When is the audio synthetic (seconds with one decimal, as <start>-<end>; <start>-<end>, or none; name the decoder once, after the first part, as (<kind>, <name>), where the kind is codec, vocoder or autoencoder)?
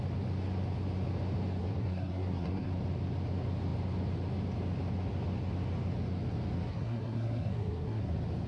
1.6-2.7 (codec, SNAC); 6.7-8.1